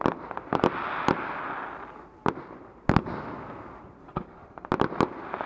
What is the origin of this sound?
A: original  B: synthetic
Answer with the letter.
A